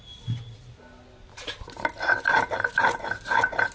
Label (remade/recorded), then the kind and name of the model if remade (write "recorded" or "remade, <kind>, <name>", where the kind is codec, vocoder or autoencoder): recorded